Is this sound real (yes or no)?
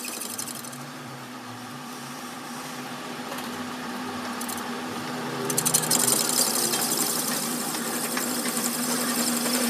no